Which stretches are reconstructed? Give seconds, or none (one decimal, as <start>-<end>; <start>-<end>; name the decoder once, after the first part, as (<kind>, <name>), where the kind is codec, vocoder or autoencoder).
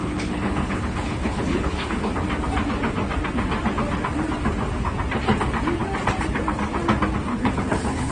0.0-2.0 (codec, HILCodec); 7.3-8.1